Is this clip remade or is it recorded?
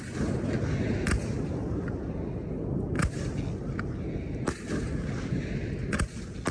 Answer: recorded